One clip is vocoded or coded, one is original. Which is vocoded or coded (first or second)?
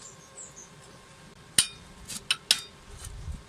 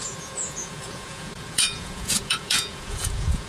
second